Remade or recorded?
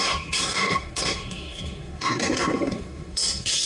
remade